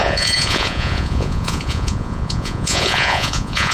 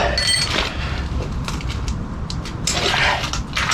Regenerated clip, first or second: first